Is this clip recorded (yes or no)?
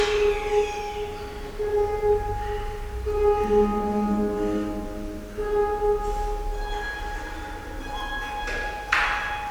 yes